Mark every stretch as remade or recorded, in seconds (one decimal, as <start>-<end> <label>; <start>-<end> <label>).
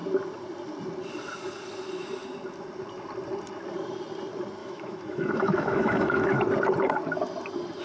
0.0-4.6 recorded; 4.6-6.4 remade; 6.4-7.8 recorded